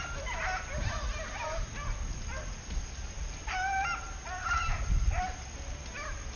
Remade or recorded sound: recorded